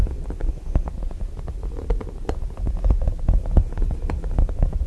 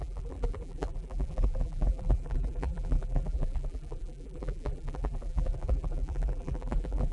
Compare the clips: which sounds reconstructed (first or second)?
second